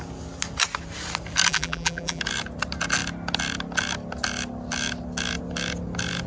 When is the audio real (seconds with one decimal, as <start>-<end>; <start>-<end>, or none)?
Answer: 0.0-1.5; 2.2-6.3